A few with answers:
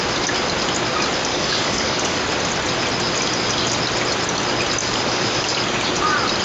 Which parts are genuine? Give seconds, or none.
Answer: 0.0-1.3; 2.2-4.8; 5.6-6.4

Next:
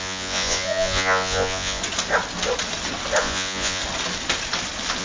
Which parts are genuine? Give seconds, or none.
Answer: 1.8-3.2; 3.8-5.0

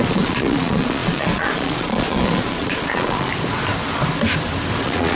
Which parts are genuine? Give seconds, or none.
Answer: 3.3-4.8

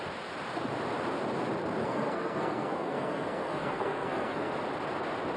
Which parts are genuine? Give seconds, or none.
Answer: 0.0-1.8; 4.5-5.4

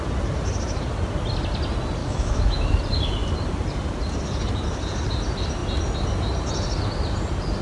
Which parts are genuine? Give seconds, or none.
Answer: 0.0-2.0; 2.8-7.6

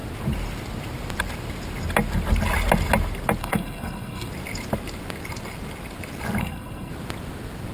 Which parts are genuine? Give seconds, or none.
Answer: 0.0-3.4; 4.3-6.4; 6.9-7.7